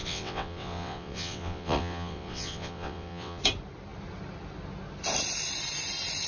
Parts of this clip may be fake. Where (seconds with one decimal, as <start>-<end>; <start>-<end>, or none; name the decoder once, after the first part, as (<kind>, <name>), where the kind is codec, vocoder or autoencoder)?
0.0-3.4 (vocoder, WaveNeXt)